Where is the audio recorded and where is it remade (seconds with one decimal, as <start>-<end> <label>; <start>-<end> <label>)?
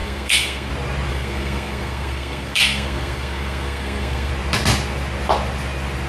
0.0-0.7 remade; 0.7-1.1 recorded; 1.1-4.3 remade; 4.3-6.1 recorded